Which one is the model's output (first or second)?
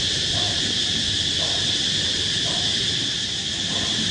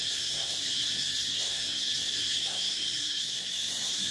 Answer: second